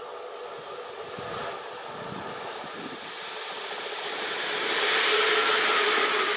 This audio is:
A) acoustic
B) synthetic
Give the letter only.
A